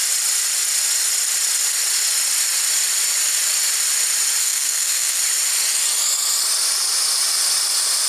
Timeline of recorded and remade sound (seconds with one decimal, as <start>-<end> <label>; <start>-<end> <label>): 0.0-4.4 recorded; 4.4-5.2 remade; 5.2-8.1 recorded